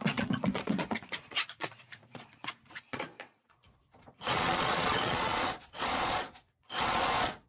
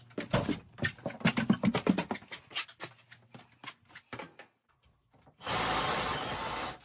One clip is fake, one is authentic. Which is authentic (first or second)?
second